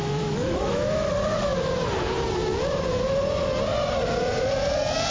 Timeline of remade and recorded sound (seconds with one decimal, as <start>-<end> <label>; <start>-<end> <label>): 0.0-1.1 remade; 1.1-5.1 recorded